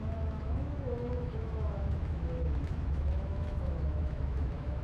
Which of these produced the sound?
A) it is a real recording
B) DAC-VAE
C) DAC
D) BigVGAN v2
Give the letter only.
B